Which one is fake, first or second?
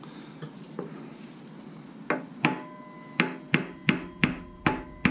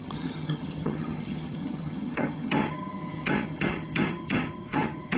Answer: second